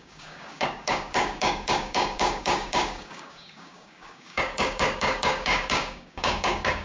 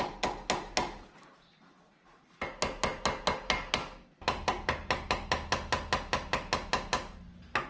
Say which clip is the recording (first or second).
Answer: second